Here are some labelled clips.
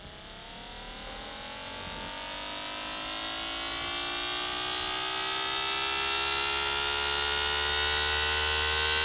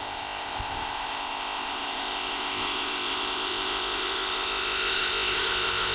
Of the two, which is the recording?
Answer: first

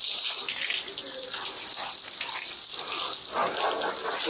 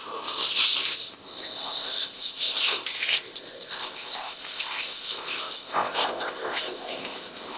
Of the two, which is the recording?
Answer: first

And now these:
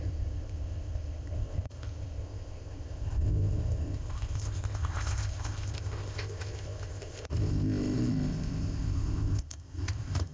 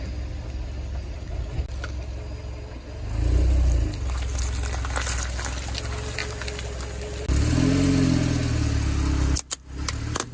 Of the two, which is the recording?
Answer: second